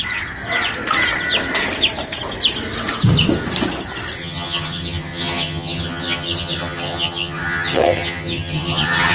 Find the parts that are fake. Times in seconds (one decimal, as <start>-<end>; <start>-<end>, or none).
4.2-9.1